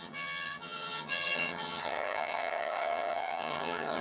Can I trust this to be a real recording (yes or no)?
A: no